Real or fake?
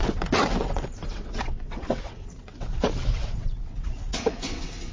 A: fake